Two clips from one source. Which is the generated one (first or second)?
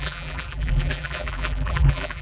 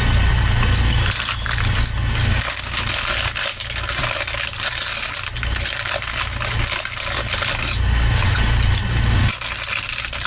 first